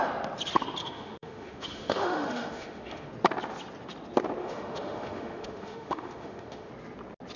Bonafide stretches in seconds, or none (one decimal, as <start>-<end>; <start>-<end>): 0.0-0.8; 3.1-4.4; 6.7-7.4